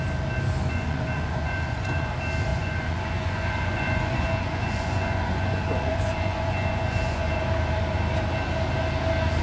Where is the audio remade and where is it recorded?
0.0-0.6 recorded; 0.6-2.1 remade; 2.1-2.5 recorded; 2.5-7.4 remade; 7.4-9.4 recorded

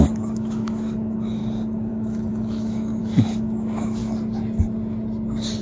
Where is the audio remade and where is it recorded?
0.0-1.4 remade; 1.4-1.9 recorded; 1.9-4.0 remade; 4.0-5.6 recorded

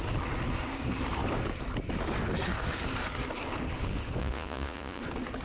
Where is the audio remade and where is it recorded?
0.0-4.2 recorded; 4.2-5.0 remade; 5.0-5.4 recorded

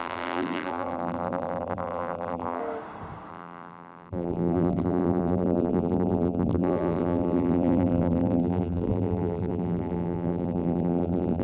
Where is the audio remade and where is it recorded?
0.0-2.6 remade; 2.6-3.3 recorded; 3.3-11.4 remade

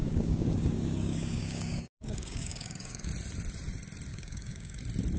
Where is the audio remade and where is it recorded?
0.0-3.1 remade; 3.1-4.1 recorded; 4.1-4.8 remade; 4.8-5.2 recorded

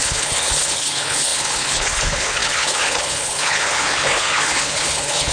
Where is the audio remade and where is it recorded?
0.0-5.3 remade